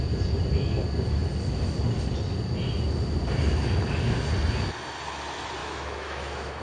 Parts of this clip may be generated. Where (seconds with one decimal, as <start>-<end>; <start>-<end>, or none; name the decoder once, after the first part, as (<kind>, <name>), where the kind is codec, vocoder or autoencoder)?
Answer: 5.6-6.6 (autoencoder, DAC-VAE)